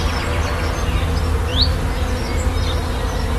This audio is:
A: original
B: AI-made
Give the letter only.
A